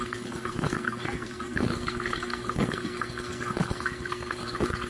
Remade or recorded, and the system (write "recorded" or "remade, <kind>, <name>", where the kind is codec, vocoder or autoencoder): remade, codec, SNAC